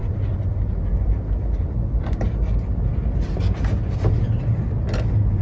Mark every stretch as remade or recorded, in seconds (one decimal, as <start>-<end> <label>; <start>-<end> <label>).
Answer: 0.0-0.7 remade; 0.7-5.4 recorded